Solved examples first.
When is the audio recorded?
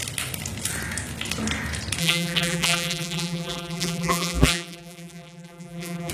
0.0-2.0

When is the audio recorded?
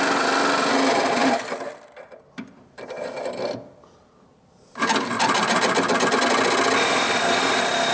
0.0-1.2; 5.9-7.9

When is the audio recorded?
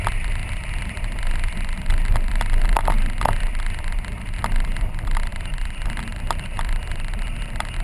none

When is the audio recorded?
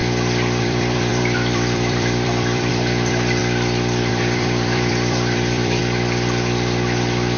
0.0-0.6; 3.4-4.1; 5.8-7.4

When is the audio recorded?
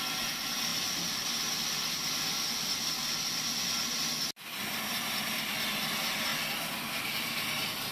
0.0-7.9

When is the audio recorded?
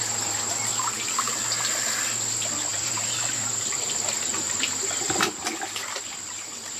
0.0-0.7; 1.4-2.7; 3.5-4.3; 5.5-6.8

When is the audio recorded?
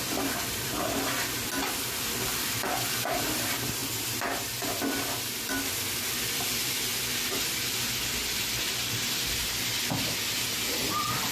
3.8-5.4